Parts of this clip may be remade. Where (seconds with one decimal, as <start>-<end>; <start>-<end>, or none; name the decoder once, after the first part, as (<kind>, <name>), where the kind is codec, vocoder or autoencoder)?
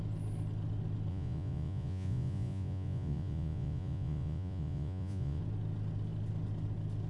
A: 1.1-5.4 (vocoder, Vocos)